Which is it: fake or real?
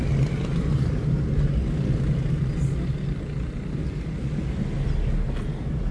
real